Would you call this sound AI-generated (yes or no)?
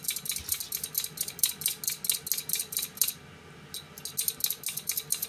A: no